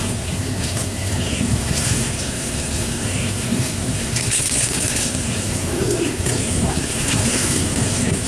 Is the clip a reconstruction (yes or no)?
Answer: yes